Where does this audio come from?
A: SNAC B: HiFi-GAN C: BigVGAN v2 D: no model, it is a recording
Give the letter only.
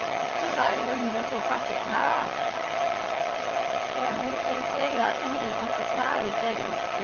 B